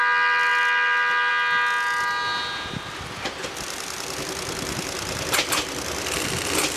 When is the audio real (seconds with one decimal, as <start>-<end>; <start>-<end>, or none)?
0.0-6.8